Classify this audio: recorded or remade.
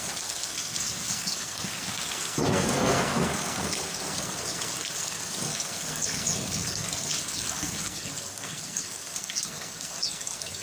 remade